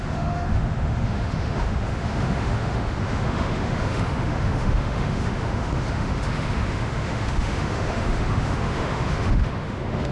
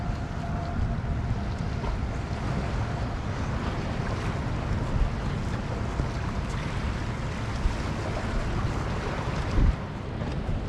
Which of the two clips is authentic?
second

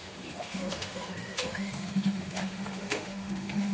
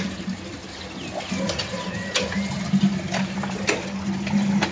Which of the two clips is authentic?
second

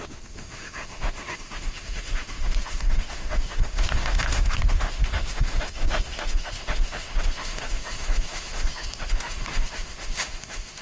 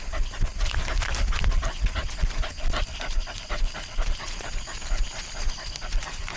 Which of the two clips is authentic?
second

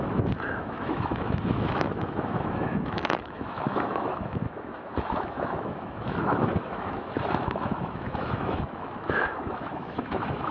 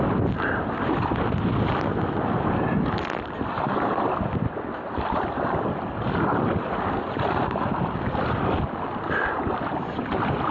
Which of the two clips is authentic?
second